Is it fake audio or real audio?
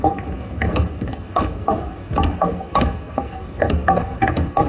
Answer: fake